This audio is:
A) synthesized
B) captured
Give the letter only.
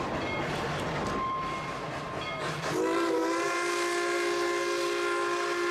B